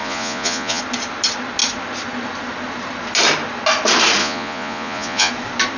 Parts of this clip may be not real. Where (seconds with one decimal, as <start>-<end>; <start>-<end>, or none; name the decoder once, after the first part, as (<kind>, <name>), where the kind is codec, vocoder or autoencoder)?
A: 0.0-0.8 (vocoder, Vocos); 4.2-5.3